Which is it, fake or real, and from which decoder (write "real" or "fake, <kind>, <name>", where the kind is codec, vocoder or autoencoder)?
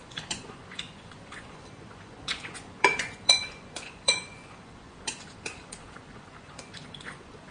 fake, vocoder, Vocos